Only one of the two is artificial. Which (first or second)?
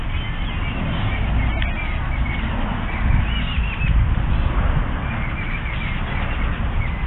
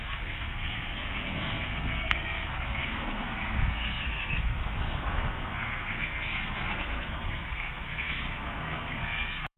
second